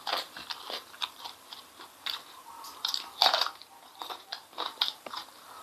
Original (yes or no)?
no